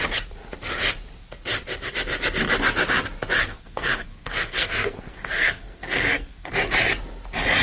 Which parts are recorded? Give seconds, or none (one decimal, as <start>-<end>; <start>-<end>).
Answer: 0.0-3.4; 6.5-7.6